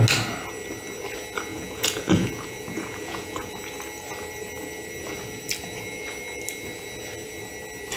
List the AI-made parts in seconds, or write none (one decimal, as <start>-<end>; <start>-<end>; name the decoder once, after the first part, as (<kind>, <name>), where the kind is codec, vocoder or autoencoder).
1.5-3.5 (vocoder, Vocos)